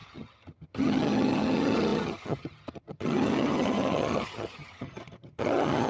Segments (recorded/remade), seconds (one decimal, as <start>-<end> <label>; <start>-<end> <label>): 0.0-5.9 remade